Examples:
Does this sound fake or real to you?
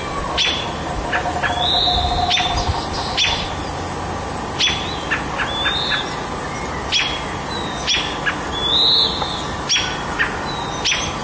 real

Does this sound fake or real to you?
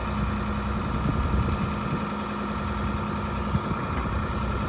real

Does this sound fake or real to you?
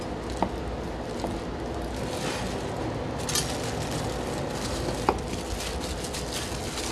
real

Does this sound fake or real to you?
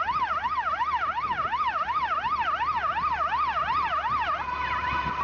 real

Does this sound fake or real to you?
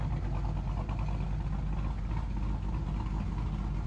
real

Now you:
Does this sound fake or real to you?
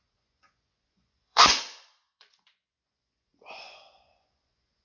fake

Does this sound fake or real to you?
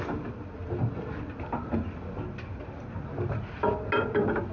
real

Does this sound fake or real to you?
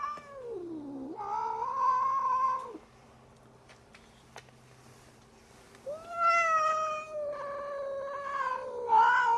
real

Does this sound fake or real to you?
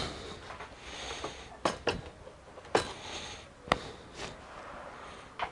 real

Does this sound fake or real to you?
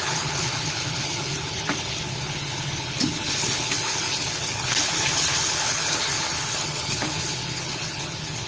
fake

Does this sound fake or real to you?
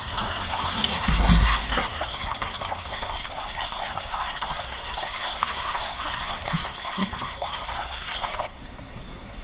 fake